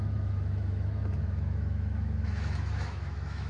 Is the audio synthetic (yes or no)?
yes